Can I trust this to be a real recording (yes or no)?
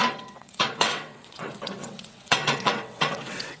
no